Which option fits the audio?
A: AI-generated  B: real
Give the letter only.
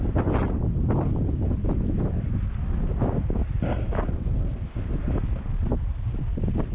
B